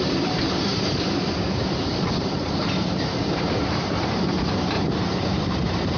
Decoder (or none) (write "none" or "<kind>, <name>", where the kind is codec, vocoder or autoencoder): vocoder, BigVGAN v2